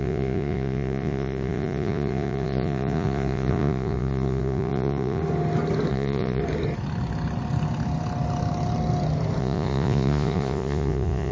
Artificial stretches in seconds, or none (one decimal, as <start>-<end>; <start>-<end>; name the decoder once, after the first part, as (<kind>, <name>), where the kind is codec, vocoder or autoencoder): 0.0-5.2 (vocoder, Vocos); 5.9-6.4; 9.4-11.3